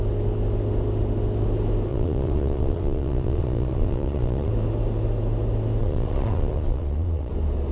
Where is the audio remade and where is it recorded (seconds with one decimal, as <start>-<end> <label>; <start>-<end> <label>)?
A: 0.0-1.9 recorded; 1.9-4.5 remade; 4.5-5.8 recorded; 5.8-7.3 remade; 7.3-7.7 recorded